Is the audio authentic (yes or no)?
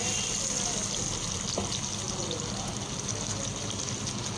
yes